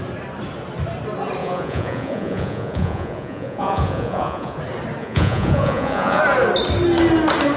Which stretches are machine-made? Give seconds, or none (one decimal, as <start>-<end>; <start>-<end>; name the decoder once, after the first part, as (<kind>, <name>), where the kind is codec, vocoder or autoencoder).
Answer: 1.4-4.6 (vocoder, Vocos); 5.0-6.2